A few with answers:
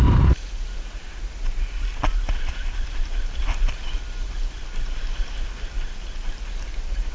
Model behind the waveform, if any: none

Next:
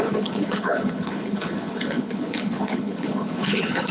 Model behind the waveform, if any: codec, HILCodec